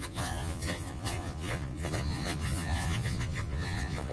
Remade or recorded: remade